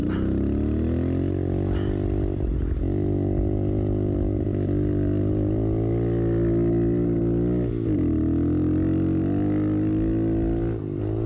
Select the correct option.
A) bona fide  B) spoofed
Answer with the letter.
A